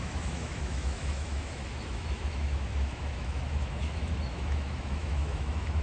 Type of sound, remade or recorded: remade